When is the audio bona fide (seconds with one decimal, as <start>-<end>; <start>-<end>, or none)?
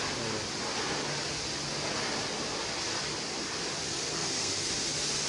0.0-4.1; 4.7-5.3